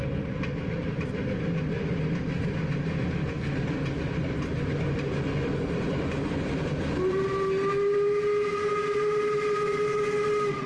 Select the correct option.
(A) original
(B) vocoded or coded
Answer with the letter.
A